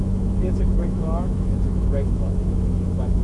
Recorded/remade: remade